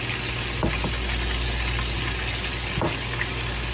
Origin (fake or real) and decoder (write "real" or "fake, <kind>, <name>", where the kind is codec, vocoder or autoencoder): real